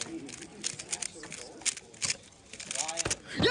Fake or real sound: real